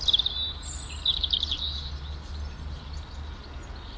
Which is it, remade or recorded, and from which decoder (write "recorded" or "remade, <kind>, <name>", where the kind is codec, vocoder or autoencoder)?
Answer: recorded